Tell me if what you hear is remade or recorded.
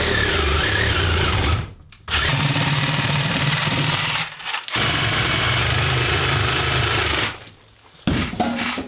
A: remade